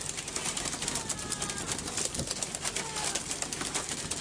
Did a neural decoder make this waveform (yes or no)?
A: no